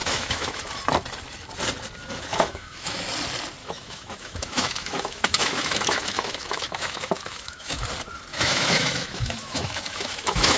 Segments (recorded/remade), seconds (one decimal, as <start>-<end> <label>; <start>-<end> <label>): 0.0-0.6 remade; 0.6-2.3 recorded; 2.3-3.0 remade; 3.0-3.6 recorded; 3.6-7.8 remade; 7.8-8.3 recorded; 8.3-10.6 remade

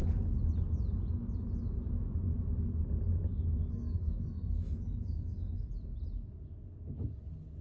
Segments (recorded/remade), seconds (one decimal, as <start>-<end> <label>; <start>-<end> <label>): 0.0-3.6 recorded; 3.6-5.7 remade; 5.7-7.6 recorded

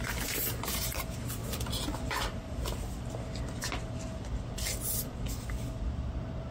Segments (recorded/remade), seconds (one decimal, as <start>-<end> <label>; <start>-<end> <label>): 0.0-6.5 recorded

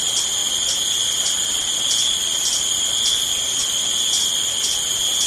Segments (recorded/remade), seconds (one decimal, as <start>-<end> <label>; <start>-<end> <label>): 0.0-5.3 recorded

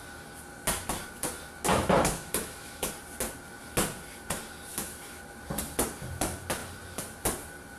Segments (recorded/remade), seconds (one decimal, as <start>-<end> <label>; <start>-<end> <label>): 0.0-1.7 recorded; 1.7-2.9 remade; 2.9-4.7 recorded; 4.7-5.2 remade; 5.2-7.8 recorded

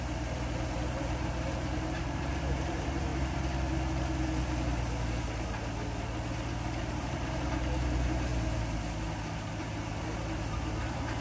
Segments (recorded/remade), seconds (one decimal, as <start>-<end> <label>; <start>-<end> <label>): 0.0-3.1 remade; 3.1-6.8 recorded; 6.8-8.3 remade; 8.3-9.6 recorded; 9.6-11.2 remade